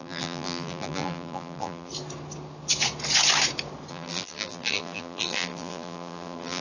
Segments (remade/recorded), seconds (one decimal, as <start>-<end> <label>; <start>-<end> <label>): 0.0-1.9 remade; 1.9-3.9 recorded; 3.9-6.6 remade